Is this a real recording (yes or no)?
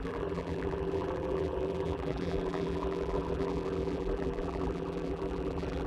no